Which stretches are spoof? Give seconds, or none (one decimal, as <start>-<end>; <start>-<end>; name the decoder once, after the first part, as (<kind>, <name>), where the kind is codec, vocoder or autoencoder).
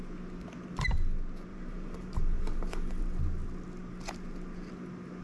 1.5-3.2 (vocoder, BigVGAN v2)